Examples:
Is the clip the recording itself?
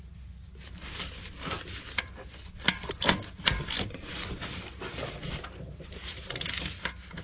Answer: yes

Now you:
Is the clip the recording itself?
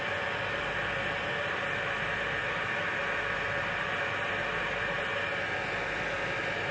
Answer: yes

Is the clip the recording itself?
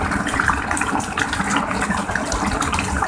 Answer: yes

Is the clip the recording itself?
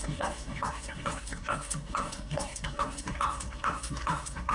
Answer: no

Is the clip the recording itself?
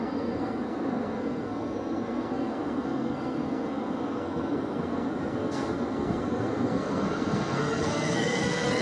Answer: no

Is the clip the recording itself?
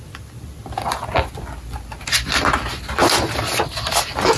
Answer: yes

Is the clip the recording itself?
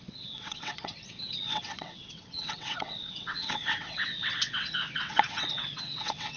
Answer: no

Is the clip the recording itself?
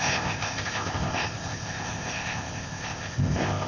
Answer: no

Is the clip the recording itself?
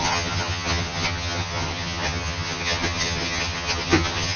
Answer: no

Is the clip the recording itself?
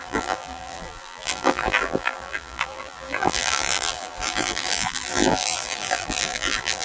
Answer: no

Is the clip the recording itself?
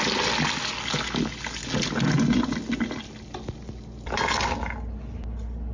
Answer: yes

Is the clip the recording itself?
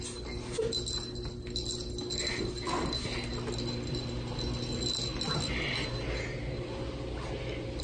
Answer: yes